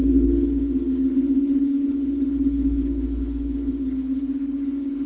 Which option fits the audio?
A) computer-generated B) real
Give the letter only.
A